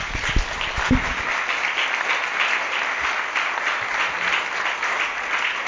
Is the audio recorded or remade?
recorded